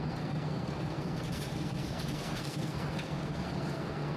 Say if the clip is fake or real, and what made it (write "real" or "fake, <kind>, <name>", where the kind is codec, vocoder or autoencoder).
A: fake, codec, SNAC